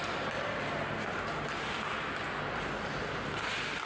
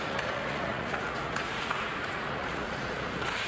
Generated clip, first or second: second